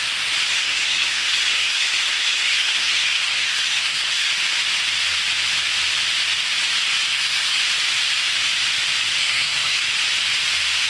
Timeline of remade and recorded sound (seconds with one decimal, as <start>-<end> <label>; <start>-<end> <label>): 0.0-0.5 recorded; 0.5-4.3 remade; 4.3-7.1 recorded; 7.1-7.6 remade; 7.6-9.2 recorded; 9.2-9.8 remade; 9.8-10.9 recorded